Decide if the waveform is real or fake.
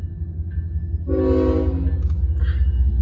real